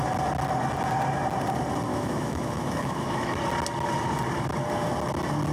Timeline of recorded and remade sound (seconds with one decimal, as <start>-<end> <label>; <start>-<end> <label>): 0.0-1.9 recorded; 1.9-3.4 remade; 3.4-5.5 recorded